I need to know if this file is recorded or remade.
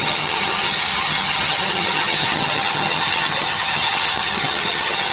remade